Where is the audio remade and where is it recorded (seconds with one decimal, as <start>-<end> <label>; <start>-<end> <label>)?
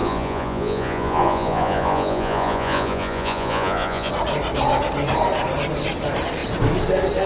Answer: 0.0-4.1 remade; 4.1-7.3 recorded